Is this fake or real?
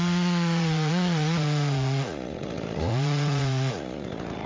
fake